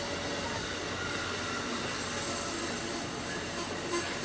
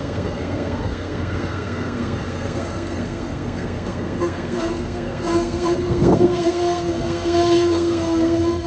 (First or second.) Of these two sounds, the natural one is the first